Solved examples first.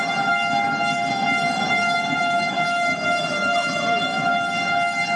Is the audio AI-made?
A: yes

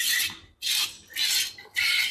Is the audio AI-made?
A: no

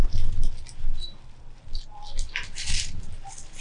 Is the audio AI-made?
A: no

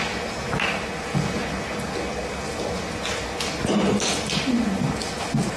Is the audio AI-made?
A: no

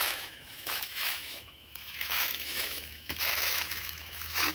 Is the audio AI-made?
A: yes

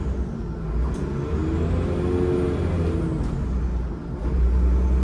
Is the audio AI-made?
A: no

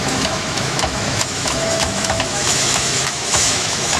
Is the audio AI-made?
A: yes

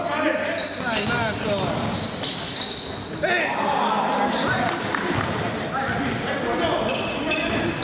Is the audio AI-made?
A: no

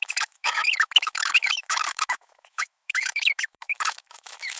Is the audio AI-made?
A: yes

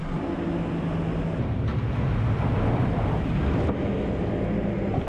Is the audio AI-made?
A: no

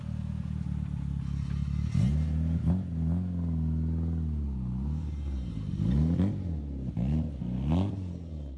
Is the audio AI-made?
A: no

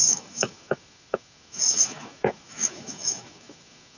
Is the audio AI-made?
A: yes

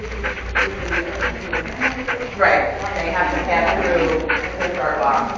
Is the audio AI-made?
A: no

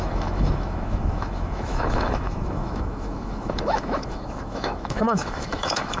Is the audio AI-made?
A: yes